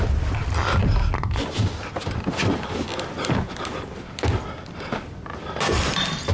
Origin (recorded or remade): remade